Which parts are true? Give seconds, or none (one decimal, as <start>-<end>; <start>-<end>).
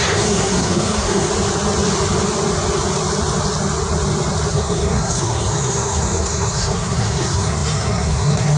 1.3-4.5